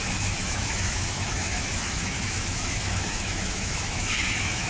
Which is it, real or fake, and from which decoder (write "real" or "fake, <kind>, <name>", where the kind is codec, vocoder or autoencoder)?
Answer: fake, autoencoder, DAC-VAE